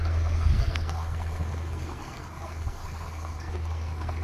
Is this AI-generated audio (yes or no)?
yes